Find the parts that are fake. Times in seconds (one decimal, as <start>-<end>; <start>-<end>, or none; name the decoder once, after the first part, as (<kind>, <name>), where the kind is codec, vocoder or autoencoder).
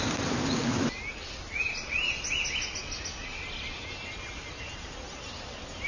none